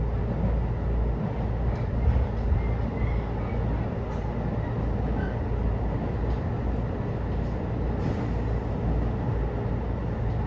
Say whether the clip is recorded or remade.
recorded